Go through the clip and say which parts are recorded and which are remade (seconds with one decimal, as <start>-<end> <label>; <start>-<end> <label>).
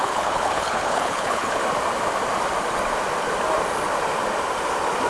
0.0-1.6 remade; 1.6-5.1 recorded